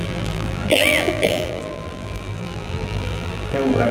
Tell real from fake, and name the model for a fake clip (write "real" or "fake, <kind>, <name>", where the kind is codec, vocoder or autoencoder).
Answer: fake, vocoder, BigVGAN v2